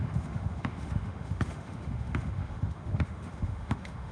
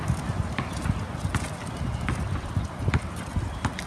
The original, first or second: second